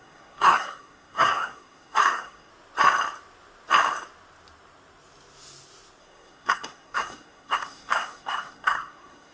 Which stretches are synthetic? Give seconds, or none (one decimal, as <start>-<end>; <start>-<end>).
0.0-2.5; 6.0-9.3